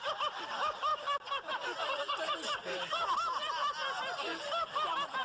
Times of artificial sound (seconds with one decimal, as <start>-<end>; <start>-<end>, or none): none